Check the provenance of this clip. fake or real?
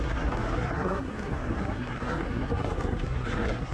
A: fake